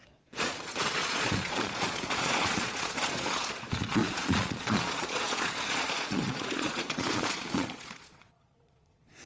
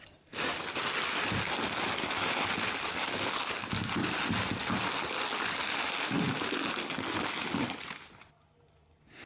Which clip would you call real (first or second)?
second